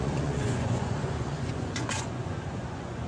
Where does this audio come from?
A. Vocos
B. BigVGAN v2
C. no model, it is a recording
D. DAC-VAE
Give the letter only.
A